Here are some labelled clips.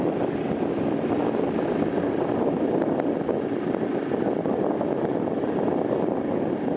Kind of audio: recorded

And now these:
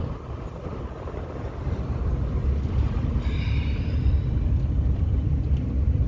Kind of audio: recorded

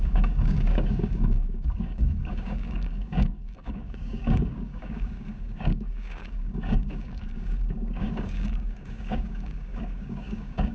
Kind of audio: remade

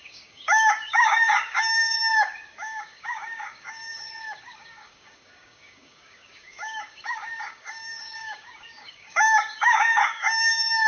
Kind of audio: remade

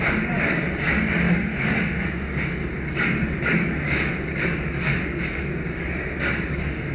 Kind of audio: remade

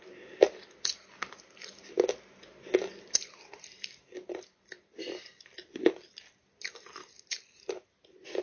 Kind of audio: recorded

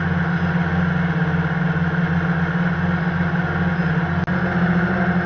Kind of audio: recorded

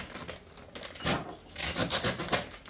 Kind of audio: recorded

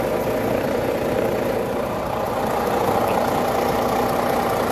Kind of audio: recorded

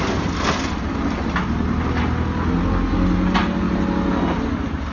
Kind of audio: recorded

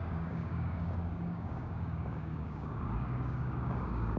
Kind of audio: remade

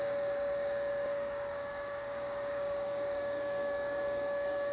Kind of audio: remade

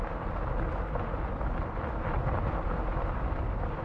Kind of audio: recorded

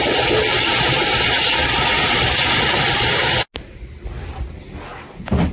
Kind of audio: recorded